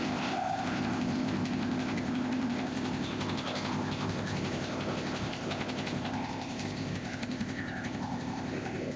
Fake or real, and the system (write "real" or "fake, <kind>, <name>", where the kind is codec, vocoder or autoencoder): fake, codec, ZipCodec